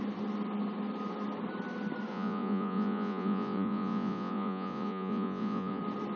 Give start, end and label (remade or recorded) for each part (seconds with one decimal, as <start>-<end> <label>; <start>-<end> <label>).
0.0-2.1 recorded; 2.1-5.8 remade; 5.8-6.2 recorded